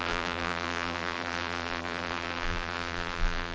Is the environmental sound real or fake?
fake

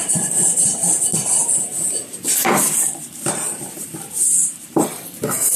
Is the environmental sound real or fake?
fake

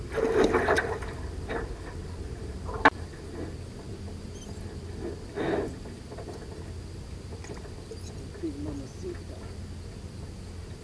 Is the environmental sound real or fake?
real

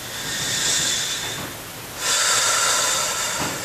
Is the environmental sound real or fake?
real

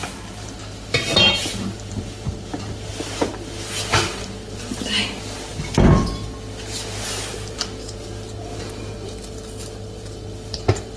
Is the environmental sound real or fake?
real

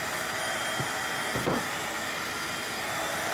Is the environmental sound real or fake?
real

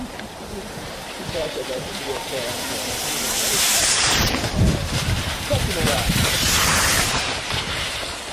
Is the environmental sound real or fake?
fake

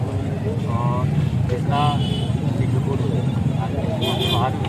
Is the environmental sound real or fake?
real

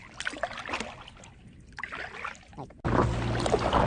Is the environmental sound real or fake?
real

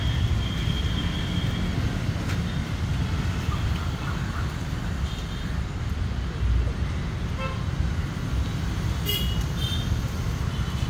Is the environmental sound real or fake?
real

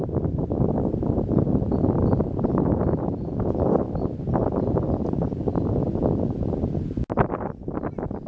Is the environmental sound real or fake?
real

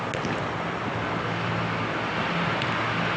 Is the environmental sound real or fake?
real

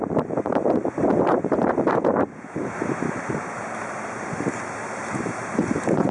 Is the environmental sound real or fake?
fake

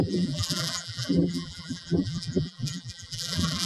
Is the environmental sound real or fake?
fake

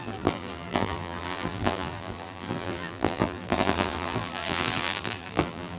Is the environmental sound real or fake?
fake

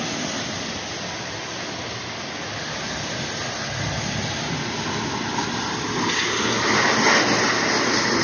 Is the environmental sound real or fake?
real